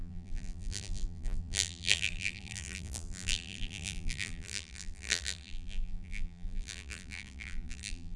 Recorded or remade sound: remade